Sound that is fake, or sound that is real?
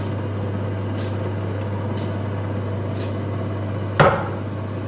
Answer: real